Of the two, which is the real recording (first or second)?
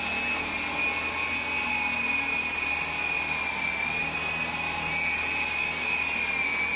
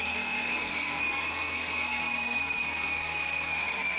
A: first